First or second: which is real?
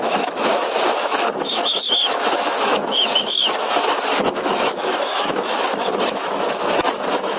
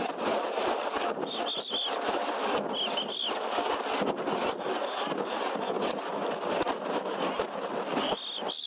second